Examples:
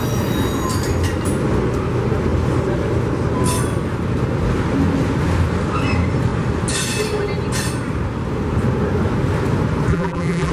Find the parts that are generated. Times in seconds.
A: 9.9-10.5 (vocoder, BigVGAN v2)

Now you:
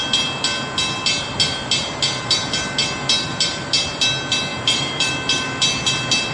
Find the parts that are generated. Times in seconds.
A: 4.5-5.1 (vocoder, BigVGAN v2)

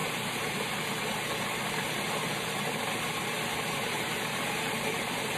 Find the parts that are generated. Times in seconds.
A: 0.0-5.4 (vocoder, BigVGAN v2)

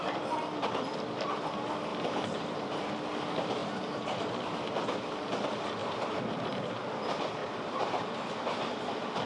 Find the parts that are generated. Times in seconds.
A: 1.9-2.9 (vocoder, BigVGAN v2); 3.6-4.2; 5.8-6.8; 7.4-8.1